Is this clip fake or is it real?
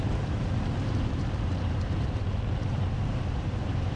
fake